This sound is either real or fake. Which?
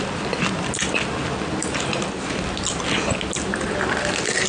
real